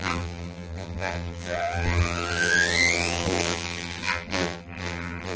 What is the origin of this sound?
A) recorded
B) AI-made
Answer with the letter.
B